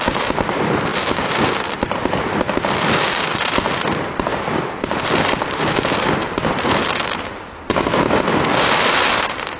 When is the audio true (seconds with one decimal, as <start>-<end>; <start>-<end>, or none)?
0.0-0.9; 1.4-4.3; 9.2-9.6